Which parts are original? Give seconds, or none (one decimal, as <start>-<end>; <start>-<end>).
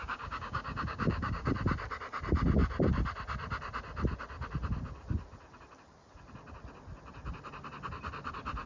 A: 1.5-8.7